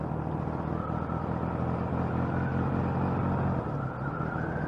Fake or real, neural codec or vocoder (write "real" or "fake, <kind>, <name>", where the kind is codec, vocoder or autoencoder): real